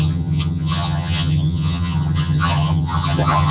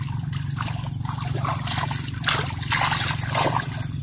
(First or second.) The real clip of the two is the second